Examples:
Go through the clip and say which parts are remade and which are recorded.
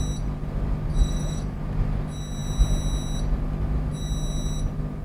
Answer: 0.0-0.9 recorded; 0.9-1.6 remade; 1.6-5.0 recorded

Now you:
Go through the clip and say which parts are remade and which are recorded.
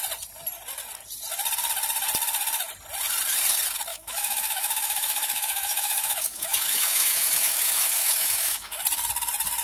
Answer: 0.0-3.9 recorded; 3.9-8.8 remade; 8.8-9.6 recorded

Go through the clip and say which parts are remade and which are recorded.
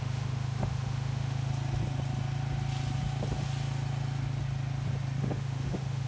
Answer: 0.0-1.5 remade; 1.5-5.2 recorded; 5.2-6.1 remade